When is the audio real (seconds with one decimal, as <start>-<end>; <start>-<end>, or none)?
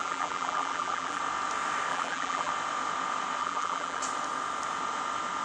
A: 1.2-1.9; 2.5-3.4; 4.0-5.4